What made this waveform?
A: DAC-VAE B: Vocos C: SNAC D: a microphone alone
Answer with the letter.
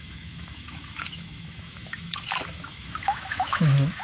A